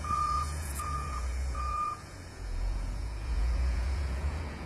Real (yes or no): no